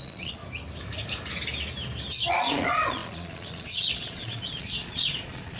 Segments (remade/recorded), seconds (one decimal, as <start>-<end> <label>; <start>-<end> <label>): 0.0-0.4 remade; 0.4-2.3 recorded; 2.3-5.6 remade